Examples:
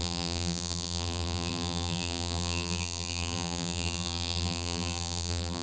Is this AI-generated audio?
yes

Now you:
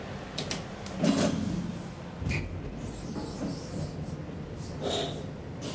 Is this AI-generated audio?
no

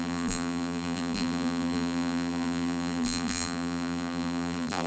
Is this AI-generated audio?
yes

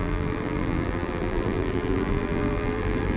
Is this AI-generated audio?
yes